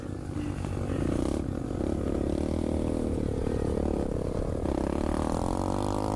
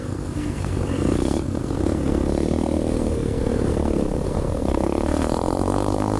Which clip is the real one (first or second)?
first